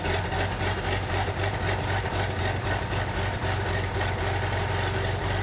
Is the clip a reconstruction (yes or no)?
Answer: no